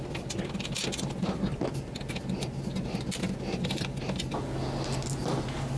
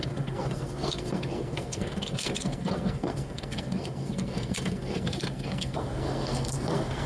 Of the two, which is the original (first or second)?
first